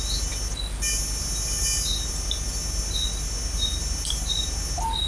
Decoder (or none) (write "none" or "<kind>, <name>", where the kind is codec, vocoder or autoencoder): none